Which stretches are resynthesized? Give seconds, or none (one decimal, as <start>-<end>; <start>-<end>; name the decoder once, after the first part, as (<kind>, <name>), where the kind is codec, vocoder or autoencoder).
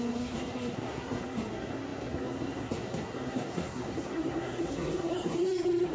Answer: 0.0-5.9 (codec, SNAC)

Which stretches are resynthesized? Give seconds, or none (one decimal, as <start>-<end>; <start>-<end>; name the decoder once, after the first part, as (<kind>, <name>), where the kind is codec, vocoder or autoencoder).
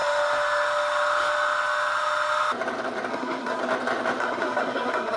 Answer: 3.1-3.6 (codec, SNAC); 4.2-5.2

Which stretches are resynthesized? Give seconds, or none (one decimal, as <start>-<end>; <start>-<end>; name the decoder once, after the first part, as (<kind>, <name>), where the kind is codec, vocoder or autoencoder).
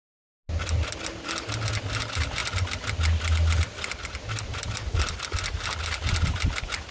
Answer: none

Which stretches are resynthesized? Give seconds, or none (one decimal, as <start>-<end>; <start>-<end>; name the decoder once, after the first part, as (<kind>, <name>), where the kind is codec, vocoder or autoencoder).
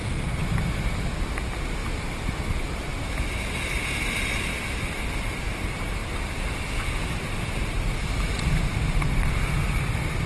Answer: none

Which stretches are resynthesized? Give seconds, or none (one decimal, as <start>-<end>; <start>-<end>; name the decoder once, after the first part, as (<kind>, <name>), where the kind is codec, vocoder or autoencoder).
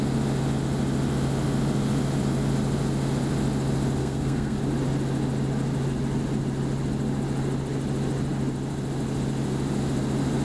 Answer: 4.0-4.6 (codec, SNAC)